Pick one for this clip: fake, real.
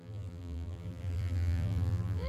fake